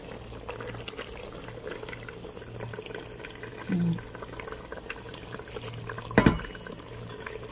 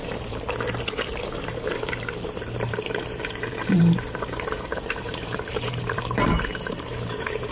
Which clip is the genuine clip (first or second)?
first